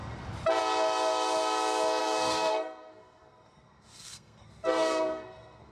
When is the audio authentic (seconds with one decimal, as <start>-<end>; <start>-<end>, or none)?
0.0-2.0